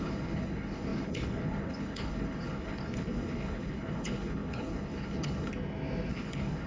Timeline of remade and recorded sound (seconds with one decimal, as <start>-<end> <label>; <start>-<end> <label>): 0.0-5.5 remade; 5.5-6.1 recorded; 6.1-6.7 remade